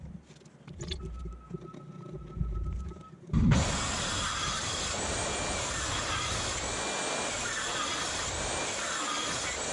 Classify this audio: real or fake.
real